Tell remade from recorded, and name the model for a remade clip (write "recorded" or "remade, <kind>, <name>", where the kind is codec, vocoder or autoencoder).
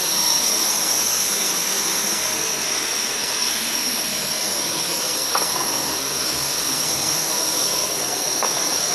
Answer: remade, codec, SNAC